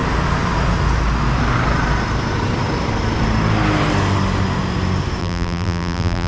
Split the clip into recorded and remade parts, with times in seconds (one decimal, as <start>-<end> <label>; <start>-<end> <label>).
0.0-5.2 recorded; 5.2-6.3 remade

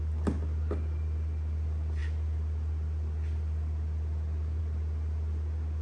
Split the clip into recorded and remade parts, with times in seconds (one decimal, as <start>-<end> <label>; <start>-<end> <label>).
0.0-5.8 recorded

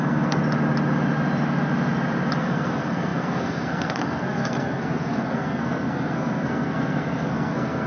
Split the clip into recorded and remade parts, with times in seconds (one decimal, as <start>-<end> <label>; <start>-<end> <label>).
0.0-0.4 remade; 0.4-2.4 recorded; 2.4-7.9 remade

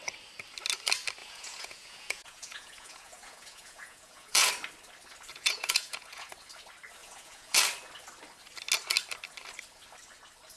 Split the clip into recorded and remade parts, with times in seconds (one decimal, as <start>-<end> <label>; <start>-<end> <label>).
0.0-1.2 recorded; 1.2-4.5 remade; 4.5-5.3 recorded; 5.3-6.3 remade; 6.3-7.0 recorded; 7.0-7.6 remade; 7.6-10.6 recorded

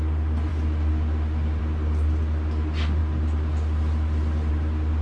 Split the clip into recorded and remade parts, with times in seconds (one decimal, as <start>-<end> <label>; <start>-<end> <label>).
0.0-5.0 recorded

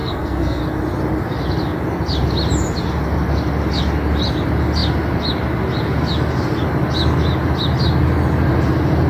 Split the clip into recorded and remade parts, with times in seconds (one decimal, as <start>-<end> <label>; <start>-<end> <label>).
0.0-0.6 remade; 0.6-9.1 recorded

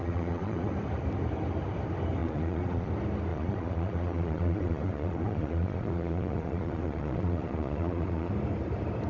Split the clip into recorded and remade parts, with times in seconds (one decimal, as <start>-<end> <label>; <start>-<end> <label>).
0.0-0.7 remade; 0.7-2.2 recorded; 2.2-2.9 remade; 2.9-3.3 recorded; 3.3-8.3 remade; 8.3-9.1 recorded